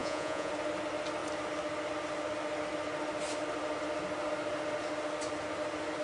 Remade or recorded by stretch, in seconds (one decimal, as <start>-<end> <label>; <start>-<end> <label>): 0.0-0.5 remade; 0.5-6.0 recorded